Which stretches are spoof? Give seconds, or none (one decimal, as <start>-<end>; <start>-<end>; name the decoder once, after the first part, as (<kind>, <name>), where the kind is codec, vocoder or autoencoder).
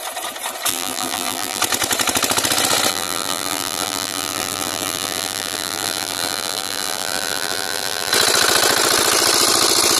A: 0.7-1.6 (vocoder, BigVGAN v2); 2.9-8.1